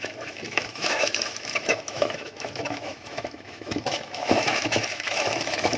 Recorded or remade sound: remade